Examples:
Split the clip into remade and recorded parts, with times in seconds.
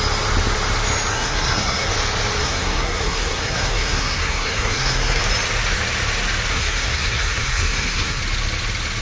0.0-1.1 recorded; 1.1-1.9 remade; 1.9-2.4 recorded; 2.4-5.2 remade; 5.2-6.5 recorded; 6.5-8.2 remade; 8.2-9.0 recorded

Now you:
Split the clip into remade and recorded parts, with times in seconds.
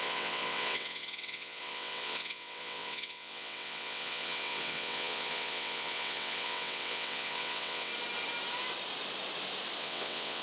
0.0-7.9 remade; 7.9-9.8 recorded; 9.8-10.4 remade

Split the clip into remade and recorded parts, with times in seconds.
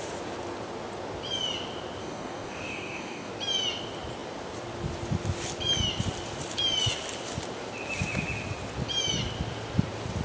0.0-2.0 recorded; 2.0-3.3 remade; 3.3-10.2 recorded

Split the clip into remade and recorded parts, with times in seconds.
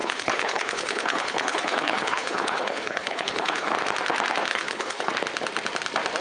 0.0-3.7 remade; 3.7-4.5 recorded; 4.5-5.1 remade; 5.1-6.2 recorded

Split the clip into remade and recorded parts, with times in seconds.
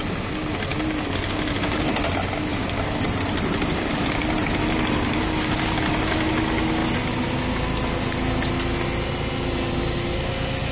0.0-2.5 recorded; 2.5-4.2 remade; 4.2-10.7 recorded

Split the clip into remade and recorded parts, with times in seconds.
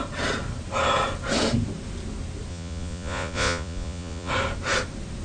0.0-2.5 recorded; 2.5-4.3 remade; 4.3-5.2 recorded